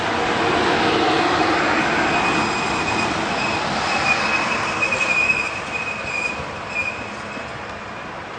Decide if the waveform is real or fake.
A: real